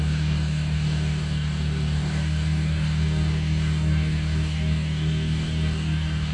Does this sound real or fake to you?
fake